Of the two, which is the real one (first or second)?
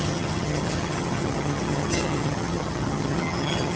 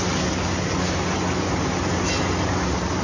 second